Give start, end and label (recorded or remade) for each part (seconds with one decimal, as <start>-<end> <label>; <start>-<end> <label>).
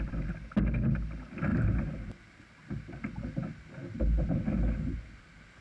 0.0-5.6 recorded